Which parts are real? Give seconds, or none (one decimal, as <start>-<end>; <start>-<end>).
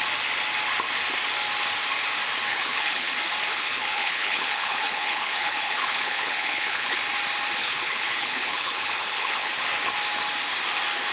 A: 0.0-2.5; 3.1-3.5; 7.0-7.6; 9.5-11.1